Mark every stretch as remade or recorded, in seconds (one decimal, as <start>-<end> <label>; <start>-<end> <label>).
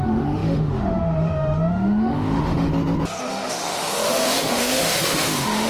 0.0-2.7 remade; 2.7-3.2 recorded; 3.2-5.7 remade